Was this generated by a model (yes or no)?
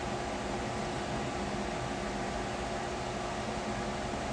no